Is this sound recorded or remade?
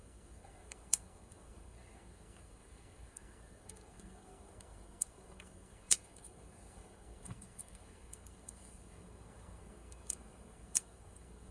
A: remade